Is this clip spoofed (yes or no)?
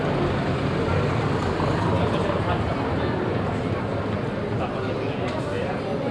no